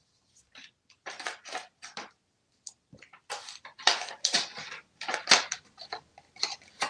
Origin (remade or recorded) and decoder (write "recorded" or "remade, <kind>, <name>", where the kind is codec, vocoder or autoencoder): recorded